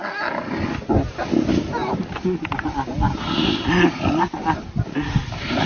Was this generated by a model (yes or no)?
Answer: no